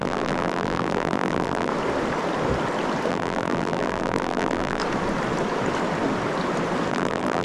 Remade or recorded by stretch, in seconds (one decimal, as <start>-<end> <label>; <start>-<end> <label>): 0.0-1.7 remade; 1.7-3.1 recorded; 3.1-4.8 remade; 4.8-6.9 recorded; 6.9-7.4 remade